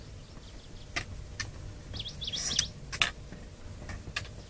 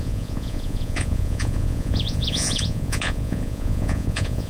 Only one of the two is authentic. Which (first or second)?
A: first